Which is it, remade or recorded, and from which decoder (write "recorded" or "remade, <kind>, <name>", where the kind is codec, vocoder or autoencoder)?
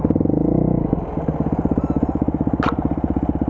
recorded